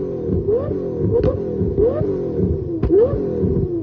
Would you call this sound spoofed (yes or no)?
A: no